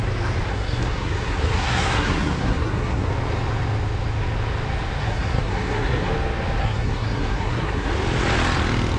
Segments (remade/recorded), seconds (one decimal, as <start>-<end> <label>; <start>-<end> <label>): 0.0-0.5 recorded; 0.5-3.1 remade; 3.1-5.0 recorded; 5.0-6.1 remade; 6.1-6.6 recorded; 6.6-7.9 remade; 7.9-9.0 recorded